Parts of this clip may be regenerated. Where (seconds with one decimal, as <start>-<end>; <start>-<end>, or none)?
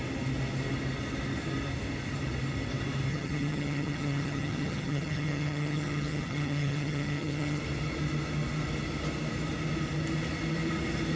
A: 3.1-7.6